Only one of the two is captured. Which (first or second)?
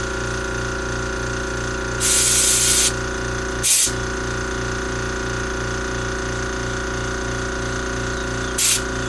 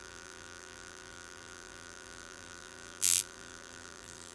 first